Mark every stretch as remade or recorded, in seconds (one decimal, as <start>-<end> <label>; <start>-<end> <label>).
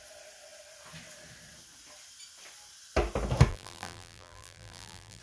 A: 0.0-3.5 recorded; 3.5-5.2 remade